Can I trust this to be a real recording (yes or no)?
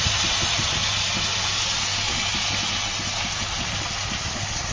yes